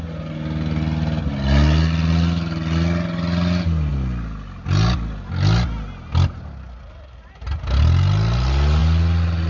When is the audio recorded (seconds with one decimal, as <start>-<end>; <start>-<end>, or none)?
0.0-9.5